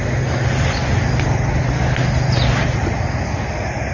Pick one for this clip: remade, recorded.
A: recorded